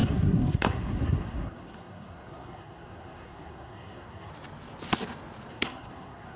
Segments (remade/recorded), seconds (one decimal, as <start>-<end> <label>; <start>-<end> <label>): 0.0-4.3 remade; 4.3-5.5 recorded; 5.5-6.4 remade